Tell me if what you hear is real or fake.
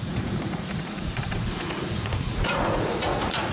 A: fake